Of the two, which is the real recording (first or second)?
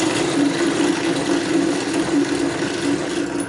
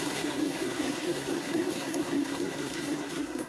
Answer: first